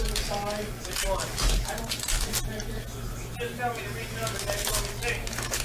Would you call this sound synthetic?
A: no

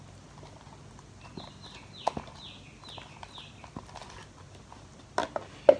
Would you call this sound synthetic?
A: no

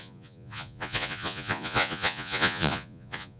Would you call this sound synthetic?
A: yes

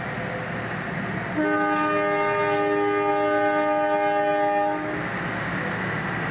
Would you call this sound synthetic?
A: no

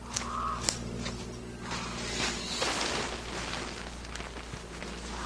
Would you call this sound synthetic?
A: no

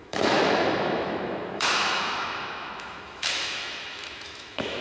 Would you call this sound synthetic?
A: yes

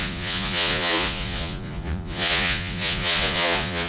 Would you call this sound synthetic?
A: yes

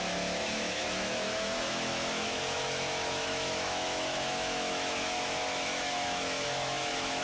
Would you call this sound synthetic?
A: yes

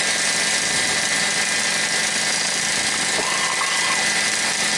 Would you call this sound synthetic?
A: no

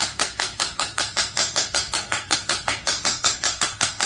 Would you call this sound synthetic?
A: yes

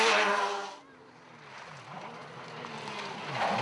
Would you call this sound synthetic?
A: no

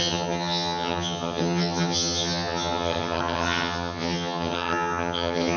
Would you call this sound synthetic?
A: yes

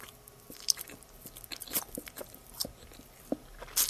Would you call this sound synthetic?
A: no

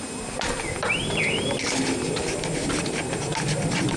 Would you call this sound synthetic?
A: no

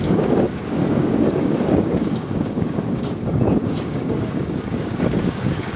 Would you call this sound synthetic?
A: yes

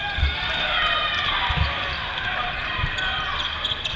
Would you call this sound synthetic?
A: no